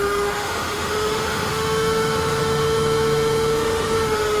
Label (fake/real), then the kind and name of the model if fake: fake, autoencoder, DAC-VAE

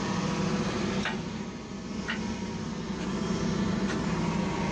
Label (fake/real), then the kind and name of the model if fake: real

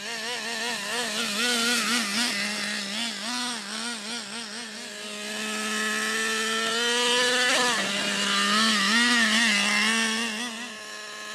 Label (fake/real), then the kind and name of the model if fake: real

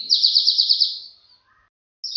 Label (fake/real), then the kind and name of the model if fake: real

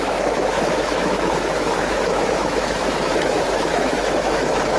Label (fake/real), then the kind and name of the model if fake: fake, autoencoder, DAC-VAE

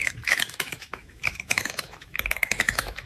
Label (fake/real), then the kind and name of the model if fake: fake, autoencoder, DAC-VAE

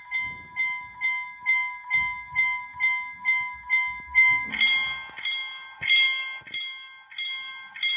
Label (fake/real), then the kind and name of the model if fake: real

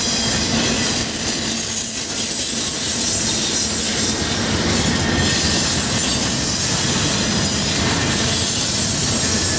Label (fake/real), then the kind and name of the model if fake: real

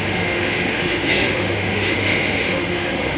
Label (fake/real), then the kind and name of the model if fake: fake, autoencoder, DAC-VAE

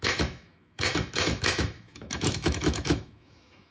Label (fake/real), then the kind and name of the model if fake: fake, autoencoder, DAC-VAE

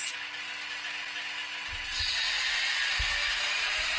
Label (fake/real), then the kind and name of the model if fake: real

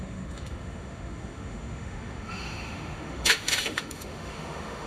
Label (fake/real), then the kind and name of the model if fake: fake, autoencoder, DAC-VAE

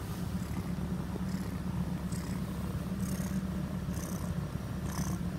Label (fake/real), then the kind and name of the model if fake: real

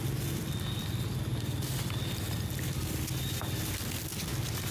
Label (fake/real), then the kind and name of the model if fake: real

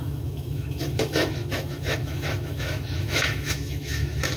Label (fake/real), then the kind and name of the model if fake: fake, autoencoder, DAC-VAE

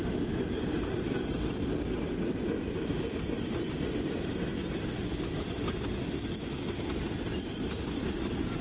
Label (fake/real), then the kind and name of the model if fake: real